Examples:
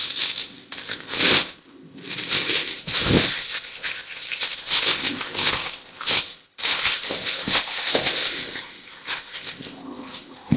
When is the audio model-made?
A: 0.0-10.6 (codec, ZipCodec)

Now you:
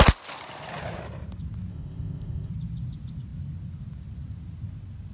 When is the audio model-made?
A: 1.7-2.5 (codec, ZipCodec)

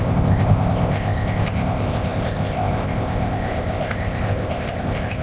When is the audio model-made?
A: 0.0-5.2 (codec, ZipCodec)

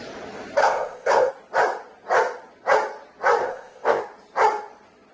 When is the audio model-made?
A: 0.6-1.3 (codec, ZipCodec); 3.4-4.0

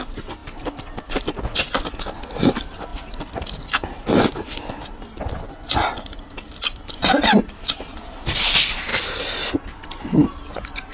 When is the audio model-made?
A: none

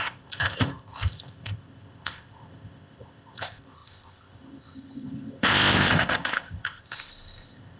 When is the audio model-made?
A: 0.0-7.8 (codec, ZipCodec)

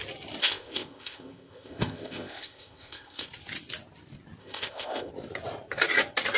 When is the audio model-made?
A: 0.4-3.3 (codec, ZipCodec); 4.4-5.1